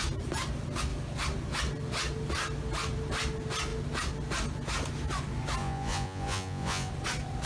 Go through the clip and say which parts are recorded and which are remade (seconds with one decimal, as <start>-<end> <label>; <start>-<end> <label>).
0.0-5.6 recorded; 5.6-6.9 remade; 6.9-7.5 recorded